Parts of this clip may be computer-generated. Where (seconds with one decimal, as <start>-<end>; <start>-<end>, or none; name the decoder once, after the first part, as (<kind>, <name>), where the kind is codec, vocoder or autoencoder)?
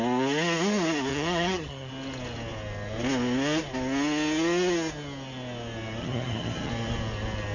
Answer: 1.1-1.9 (vocoder, HiFi-GAN); 6.0-6.7